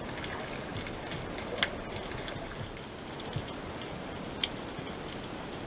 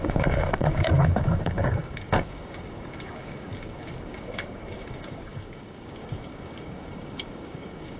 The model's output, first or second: second